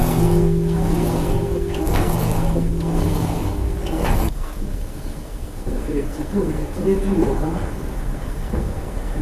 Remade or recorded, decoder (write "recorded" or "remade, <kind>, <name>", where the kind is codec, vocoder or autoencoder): remade, codec, SNAC